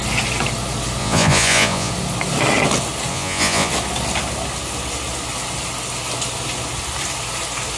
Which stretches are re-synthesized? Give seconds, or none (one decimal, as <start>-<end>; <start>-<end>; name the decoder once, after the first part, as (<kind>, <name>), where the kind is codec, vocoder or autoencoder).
1.0-1.9 (vocoder, Vocos); 3.1-3.7